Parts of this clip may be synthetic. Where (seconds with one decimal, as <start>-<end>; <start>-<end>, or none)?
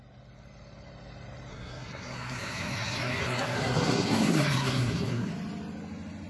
1.5-5.3